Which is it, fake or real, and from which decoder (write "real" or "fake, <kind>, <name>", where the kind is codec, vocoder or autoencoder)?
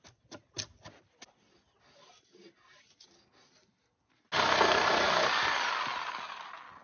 real